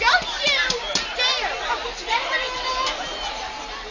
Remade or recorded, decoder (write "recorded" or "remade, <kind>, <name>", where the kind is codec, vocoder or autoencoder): recorded